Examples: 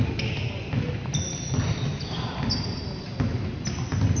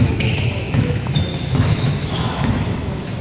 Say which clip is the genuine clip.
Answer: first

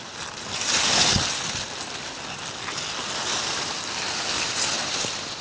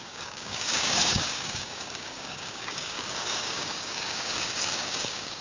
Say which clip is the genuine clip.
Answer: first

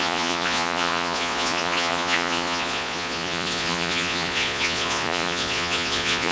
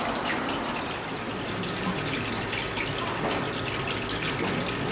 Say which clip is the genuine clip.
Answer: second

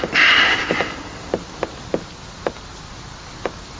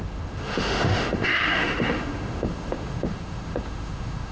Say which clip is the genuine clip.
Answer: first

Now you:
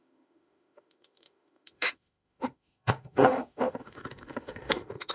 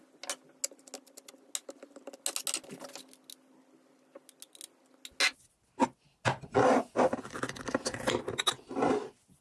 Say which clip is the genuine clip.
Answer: second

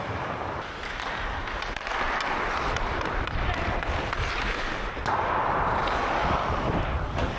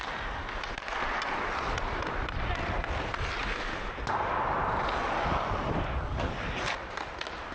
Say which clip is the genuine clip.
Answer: second